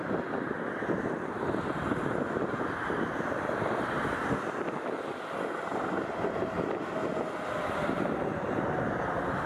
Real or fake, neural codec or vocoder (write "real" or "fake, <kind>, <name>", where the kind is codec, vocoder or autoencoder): real